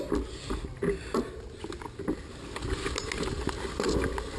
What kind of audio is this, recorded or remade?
recorded